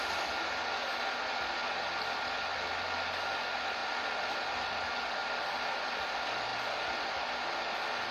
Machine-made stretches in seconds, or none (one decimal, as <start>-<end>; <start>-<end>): none